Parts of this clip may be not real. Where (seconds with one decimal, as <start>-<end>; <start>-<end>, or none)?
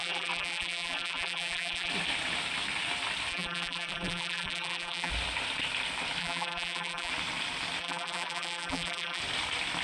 0.0-1.9; 3.3-5.1; 6.2-7.1; 7.8-9.2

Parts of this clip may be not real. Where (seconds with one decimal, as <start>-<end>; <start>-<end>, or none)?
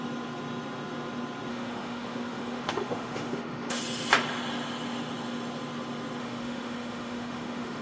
1.5-3.8; 6.2-7.8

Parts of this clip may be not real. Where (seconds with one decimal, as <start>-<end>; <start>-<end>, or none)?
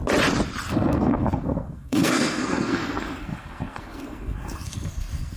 0.7-5.4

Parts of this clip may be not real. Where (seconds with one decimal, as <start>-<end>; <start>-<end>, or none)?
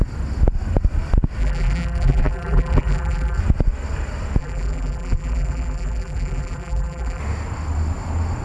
1.4-3.4; 4.4-7.2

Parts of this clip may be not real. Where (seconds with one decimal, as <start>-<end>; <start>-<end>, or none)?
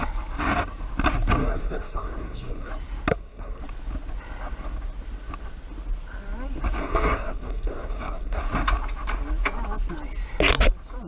1.4-2.7; 3.1-3.6; 6.8-8.4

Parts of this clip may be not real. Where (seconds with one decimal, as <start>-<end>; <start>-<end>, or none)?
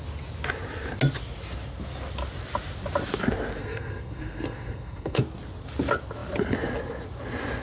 3.6-5.2